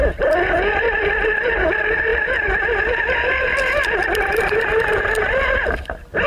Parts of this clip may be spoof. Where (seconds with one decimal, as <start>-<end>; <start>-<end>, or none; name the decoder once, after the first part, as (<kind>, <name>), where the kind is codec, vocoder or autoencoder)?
2.1-4.4 (vocoder, BigVGAN v2)